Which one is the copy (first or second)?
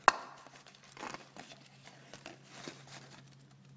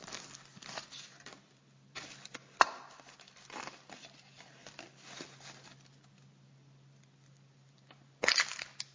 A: second